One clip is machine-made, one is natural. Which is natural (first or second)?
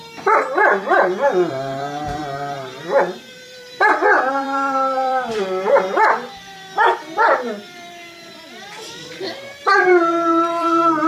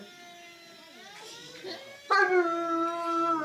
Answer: second